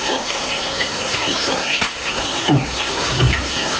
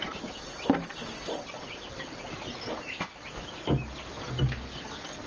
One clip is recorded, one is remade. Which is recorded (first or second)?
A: second